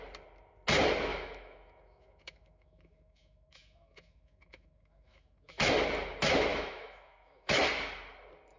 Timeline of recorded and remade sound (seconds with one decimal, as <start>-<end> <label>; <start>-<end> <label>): 0.0-1.1 recorded; 1.1-5.7 remade; 5.7-6.5 recorded; 6.5-7.6 remade; 7.6-8.6 recorded